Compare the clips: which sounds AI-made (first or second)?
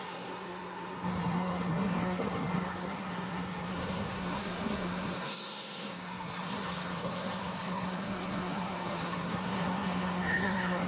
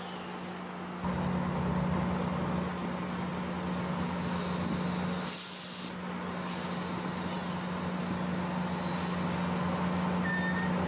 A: first